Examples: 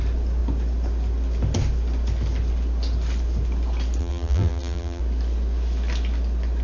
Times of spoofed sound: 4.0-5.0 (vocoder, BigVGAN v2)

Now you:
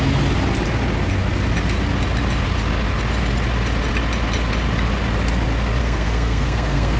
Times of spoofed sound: 5.8-7.0 (codec, SNAC)

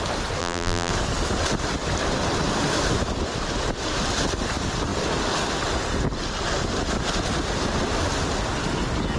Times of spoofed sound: 0.4-0.9 (vocoder, BigVGAN v2)

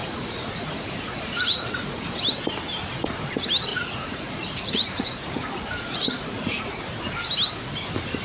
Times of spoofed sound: 0.0-2.2 (vocoder, Vocos); 3.7-6.8